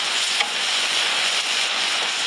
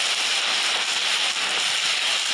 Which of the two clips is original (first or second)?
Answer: second